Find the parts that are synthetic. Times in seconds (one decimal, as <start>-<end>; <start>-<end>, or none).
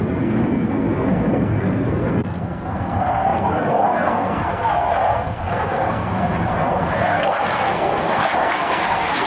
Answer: 0.0-9.3